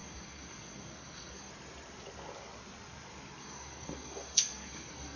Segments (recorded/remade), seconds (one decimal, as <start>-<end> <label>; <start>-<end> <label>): 0.0-1.5 remade; 1.5-3.4 recorded; 3.4-5.2 remade